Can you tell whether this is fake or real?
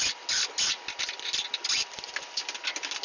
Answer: real